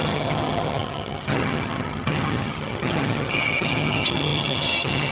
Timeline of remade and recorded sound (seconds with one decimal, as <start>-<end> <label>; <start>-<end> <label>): 0.0-5.1 remade